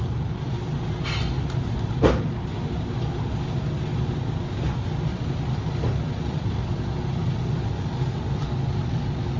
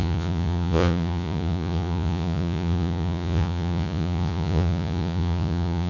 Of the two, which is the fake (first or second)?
second